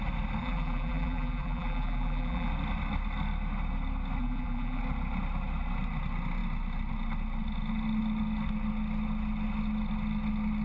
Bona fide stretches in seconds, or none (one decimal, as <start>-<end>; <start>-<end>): 0.0-0.4; 2.5-4.2; 4.8-10.6